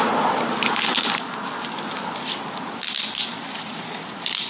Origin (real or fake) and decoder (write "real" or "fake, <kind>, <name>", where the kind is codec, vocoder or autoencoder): real